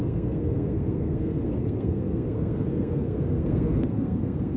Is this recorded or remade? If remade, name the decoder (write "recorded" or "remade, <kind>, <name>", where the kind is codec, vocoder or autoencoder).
remade, codec, SNAC